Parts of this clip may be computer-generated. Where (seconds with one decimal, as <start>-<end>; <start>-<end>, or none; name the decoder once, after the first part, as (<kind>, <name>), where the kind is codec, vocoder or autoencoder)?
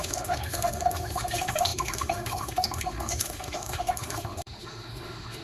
0.0-5.4 (autoencoder, DAC-VAE)